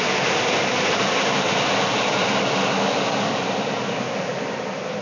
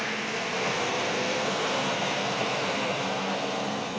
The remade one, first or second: second